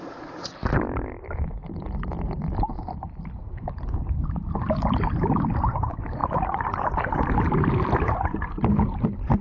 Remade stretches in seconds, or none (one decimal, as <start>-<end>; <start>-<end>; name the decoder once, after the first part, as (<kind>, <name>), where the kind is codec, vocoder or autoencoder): 0.0-6.2 (vocoder, BigVGAN v2)